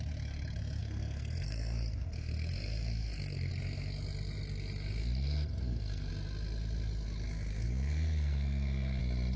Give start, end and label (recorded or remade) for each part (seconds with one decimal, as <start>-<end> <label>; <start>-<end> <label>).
0.0-0.8 recorded; 0.8-3.5 remade; 3.5-5.0 recorded; 5.0-6.1 remade; 6.1-7.5 recorded; 7.5-9.0 remade; 9.0-9.4 recorded

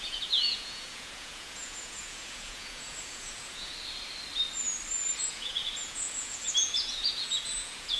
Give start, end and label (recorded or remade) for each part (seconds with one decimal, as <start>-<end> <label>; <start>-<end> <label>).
0.0-3.7 remade; 3.7-5.2 recorded; 5.2-8.0 remade

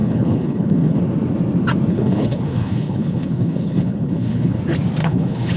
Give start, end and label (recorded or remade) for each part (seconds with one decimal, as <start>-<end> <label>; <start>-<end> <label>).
0.0-1.0 remade; 1.0-1.9 recorded; 1.9-4.6 remade; 4.6-5.0 recorded; 5.0-5.6 remade

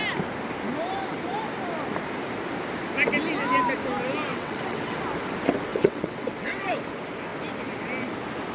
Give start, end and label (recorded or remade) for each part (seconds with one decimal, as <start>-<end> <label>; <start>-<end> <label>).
0.0-4.3 recorded; 4.3-5.0 remade; 5.0-5.7 recorded; 5.7-6.8 remade; 6.8-8.5 recorded

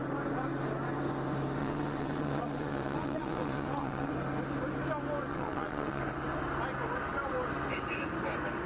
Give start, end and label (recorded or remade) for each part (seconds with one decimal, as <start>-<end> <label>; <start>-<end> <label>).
0.0-1.6 recorded; 1.6-4.1 remade; 4.1-5.3 recorded; 5.3-6.0 remade; 6.0-8.7 recorded